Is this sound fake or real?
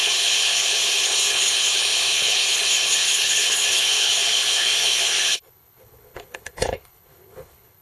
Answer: fake